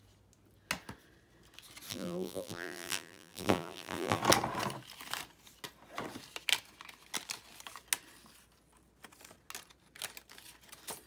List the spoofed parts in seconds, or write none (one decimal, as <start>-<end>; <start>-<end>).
1.9-4.2